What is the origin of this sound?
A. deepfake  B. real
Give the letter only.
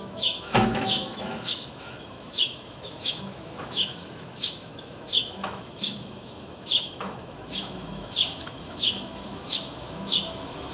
A